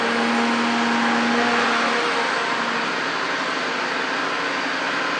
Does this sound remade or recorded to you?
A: recorded